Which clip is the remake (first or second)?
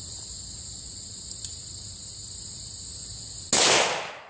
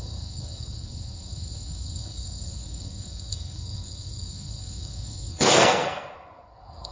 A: second